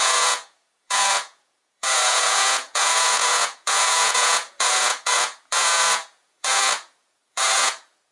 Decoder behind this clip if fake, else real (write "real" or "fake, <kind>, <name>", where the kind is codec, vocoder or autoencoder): fake, vocoder, Vocos